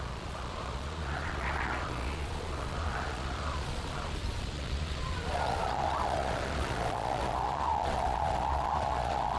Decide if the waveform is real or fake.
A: fake